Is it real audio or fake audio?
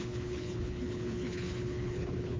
fake